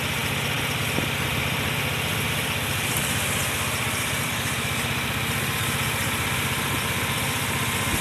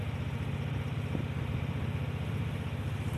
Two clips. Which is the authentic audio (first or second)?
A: second